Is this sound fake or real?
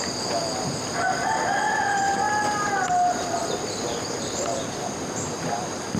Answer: real